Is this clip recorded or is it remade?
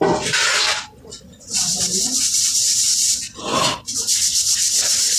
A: recorded